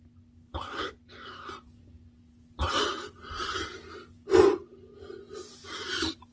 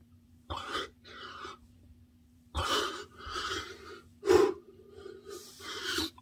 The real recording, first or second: first